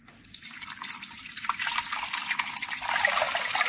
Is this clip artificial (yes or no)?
no